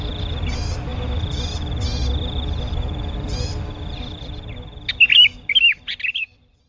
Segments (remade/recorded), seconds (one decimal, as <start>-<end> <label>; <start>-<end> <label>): 0.0-6.7 recorded